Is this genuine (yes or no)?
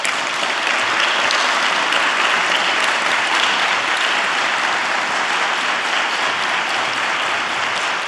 yes